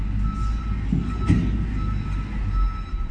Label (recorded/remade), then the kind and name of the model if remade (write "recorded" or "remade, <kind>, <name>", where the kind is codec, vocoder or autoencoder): recorded